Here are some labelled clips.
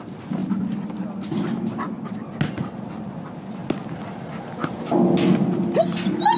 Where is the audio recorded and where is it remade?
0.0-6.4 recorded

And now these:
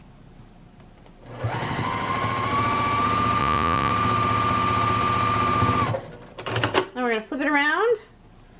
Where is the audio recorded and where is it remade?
0.0-3.4 recorded; 3.4-3.9 remade; 3.9-8.6 recorded

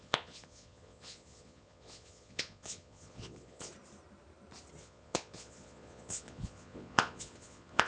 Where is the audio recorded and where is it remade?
0.0-3.7 remade; 3.7-4.8 recorded; 4.8-7.9 remade

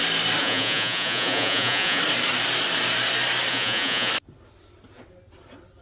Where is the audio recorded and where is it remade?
0.0-0.4 recorded; 0.4-2.0 remade; 2.0-3.5 recorded; 3.5-4.1 remade; 4.1-5.8 recorded

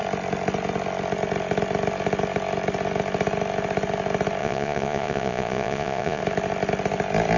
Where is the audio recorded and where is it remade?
0.0-4.4 recorded; 4.4-6.2 remade; 6.2-7.4 recorded

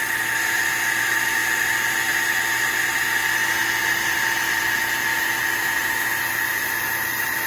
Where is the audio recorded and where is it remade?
0.0-7.5 recorded

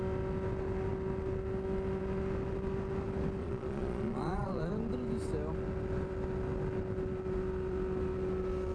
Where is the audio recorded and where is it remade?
0.0-3.4 recorded; 3.4-4.7 remade; 4.7-8.7 recorded